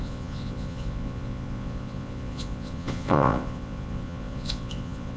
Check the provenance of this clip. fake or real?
fake